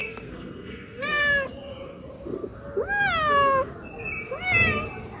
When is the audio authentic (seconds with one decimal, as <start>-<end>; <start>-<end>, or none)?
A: 1.2-5.2